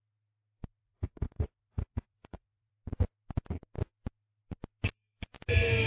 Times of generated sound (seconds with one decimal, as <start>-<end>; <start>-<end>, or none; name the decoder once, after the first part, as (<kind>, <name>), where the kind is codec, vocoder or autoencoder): 0.8-2.7 (vocoder, Vocos)